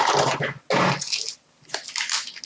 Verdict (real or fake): real